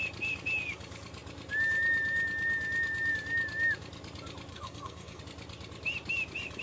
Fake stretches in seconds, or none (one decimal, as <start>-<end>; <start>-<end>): 4.5-5.2